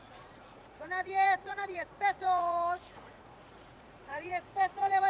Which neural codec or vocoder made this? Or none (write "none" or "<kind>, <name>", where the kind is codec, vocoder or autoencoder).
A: vocoder, Vocos